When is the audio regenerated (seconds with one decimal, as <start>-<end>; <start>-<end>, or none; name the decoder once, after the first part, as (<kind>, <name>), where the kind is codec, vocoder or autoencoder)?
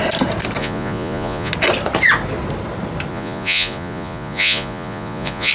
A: 0.6-1.5 (vocoder, Vocos); 3.1-5.5